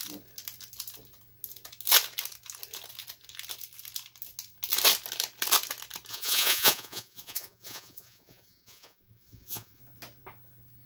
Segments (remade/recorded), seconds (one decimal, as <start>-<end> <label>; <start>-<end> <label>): 0.0-6.1 recorded; 6.1-9.8 remade; 9.8-10.9 recorded